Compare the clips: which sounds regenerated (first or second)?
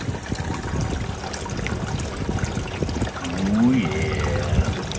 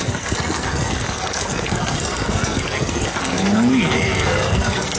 second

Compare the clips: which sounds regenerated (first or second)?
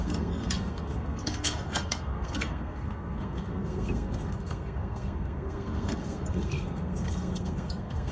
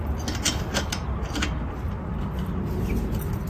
first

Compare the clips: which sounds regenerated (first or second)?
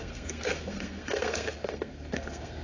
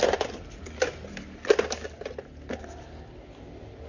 first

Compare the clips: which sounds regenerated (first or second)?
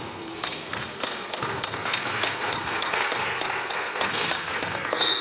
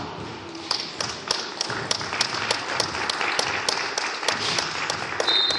first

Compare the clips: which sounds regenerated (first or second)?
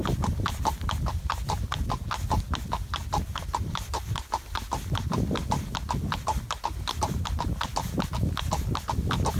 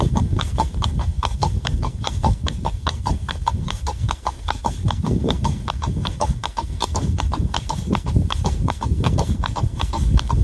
second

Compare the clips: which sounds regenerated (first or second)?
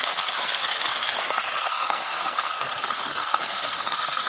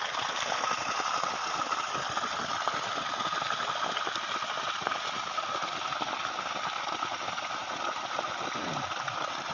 first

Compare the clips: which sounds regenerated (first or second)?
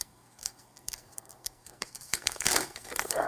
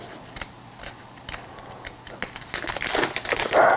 first